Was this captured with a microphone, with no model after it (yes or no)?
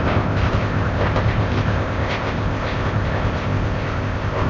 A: no